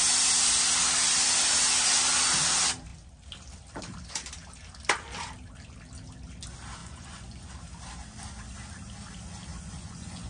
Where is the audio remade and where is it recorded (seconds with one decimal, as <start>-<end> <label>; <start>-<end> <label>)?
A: 0.0-6.8 recorded; 6.8-7.5 remade; 7.5-9.5 recorded; 9.5-10.3 remade